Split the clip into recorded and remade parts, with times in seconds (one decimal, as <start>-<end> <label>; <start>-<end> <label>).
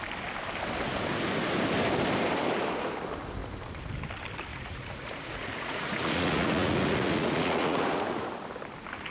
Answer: 0.0-4.5 recorded; 4.5-8.3 remade; 8.3-9.1 recorded